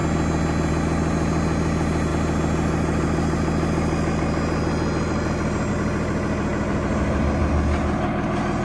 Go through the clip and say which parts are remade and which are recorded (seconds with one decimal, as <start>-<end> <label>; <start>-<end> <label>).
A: 0.0-8.6 recorded